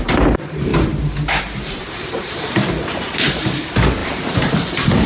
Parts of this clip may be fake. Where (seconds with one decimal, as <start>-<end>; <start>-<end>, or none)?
0.0-5.1